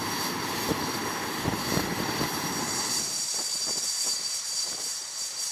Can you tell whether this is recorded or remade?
recorded